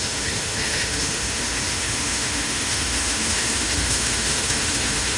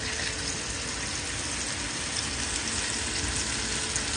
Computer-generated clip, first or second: first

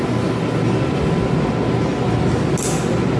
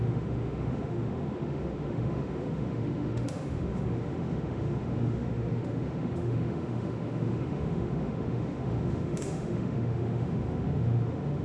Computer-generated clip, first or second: second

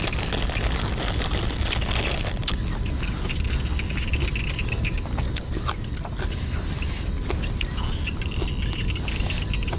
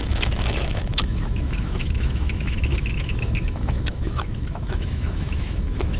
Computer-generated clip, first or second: second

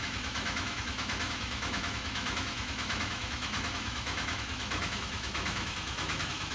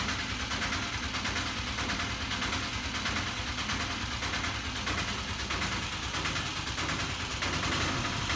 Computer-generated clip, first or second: first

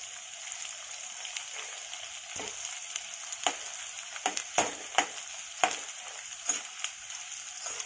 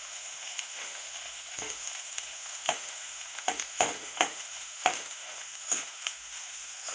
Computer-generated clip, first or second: second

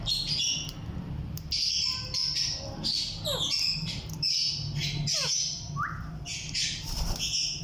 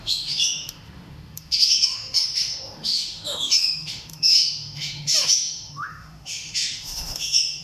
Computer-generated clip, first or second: second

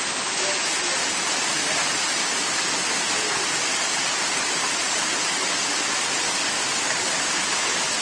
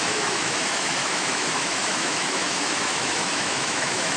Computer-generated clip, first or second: second